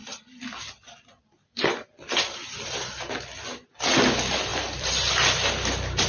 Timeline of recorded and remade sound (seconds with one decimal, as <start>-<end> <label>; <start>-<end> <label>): 0.0-2.7 remade; 2.7-4.5 recorded; 4.5-5.1 remade; 5.1-6.1 recorded